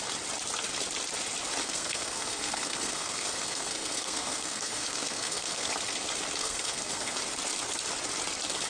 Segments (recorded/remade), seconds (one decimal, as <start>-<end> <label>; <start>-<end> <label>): 0.0-1.6 recorded; 1.6-5.7 remade; 5.7-6.4 recorded; 6.4-7.2 remade; 7.2-8.7 recorded